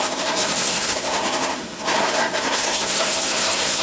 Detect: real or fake fake